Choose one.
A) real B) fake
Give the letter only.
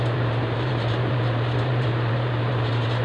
B